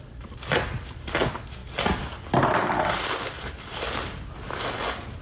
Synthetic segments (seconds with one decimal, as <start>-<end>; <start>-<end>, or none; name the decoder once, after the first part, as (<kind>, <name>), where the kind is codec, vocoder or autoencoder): none